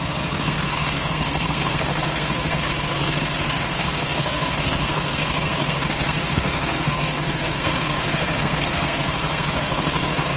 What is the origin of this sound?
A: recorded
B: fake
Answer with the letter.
B